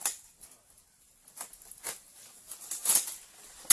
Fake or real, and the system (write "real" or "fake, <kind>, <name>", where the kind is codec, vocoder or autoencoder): real